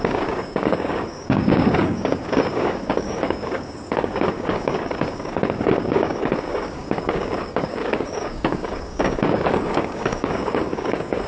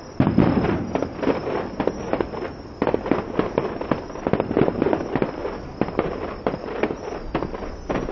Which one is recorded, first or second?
second